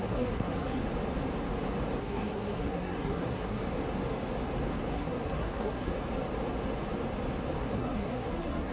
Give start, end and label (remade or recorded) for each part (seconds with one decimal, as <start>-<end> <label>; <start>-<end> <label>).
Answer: 0.0-0.8 remade; 0.8-2.0 recorded; 2.0-3.6 remade; 3.6-4.9 recorded; 4.9-5.9 remade; 5.9-7.6 recorded; 7.6-8.7 remade